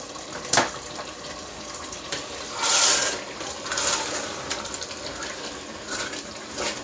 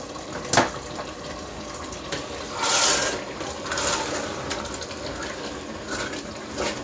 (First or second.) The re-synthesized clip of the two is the first